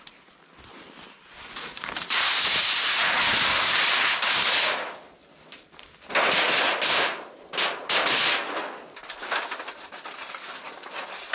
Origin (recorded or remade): recorded